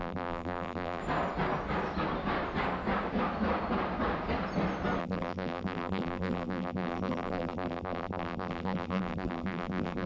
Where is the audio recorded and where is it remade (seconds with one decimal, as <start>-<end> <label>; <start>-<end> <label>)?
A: 0.0-1.0 remade; 1.0-5.0 recorded; 5.0-10.1 remade